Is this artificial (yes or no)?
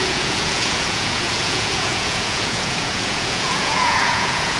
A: yes